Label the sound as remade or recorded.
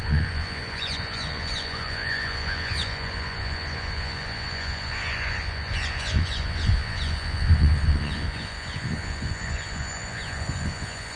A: remade